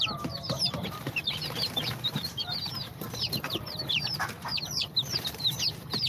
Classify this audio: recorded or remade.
remade